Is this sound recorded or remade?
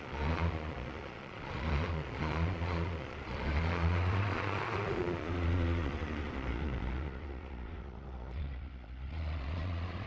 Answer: remade